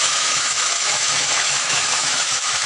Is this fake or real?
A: fake